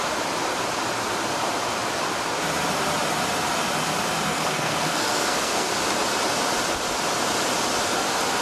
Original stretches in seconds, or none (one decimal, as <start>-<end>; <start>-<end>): 0.0-4.3; 5.7-8.4